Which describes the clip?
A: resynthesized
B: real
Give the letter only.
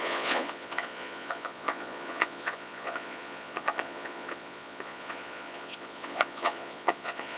A